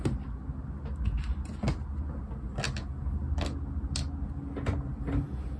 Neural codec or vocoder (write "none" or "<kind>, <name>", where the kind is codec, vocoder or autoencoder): none